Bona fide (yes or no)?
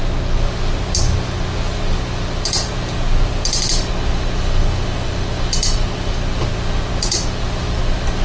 yes